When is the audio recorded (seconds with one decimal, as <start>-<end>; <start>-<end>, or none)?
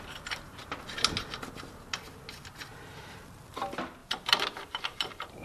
0.0-2.7; 3.4-4.0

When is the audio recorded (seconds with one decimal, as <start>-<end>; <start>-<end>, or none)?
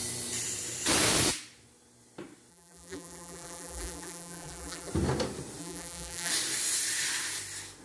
0.0-2.5; 4.9-5.6; 6.3-7.8